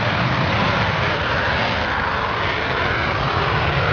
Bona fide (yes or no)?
yes